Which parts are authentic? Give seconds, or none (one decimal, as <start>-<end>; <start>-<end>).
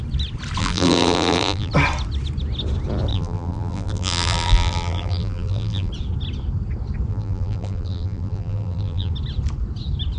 0.0-0.6; 1.7-3.1; 5.9-7.1; 9.1-10.2